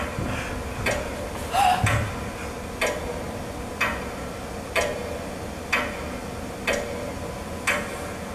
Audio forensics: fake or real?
real